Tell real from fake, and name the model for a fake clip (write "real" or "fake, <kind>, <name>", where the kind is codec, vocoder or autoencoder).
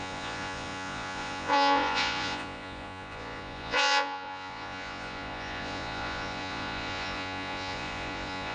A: fake, vocoder, Vocos